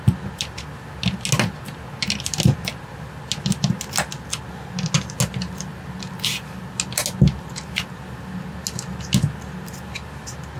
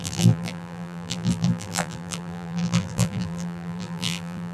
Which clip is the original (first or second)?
first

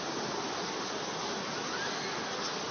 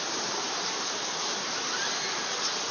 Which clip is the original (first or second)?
first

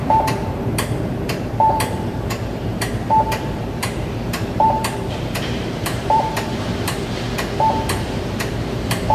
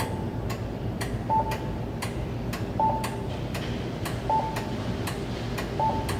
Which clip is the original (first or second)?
second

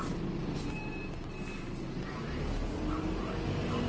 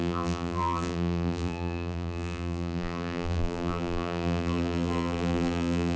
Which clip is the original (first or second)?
first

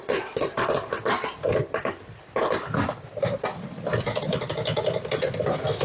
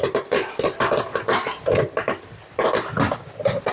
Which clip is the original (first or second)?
second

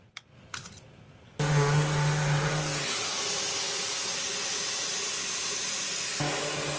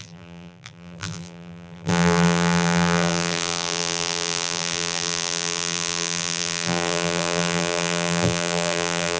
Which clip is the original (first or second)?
first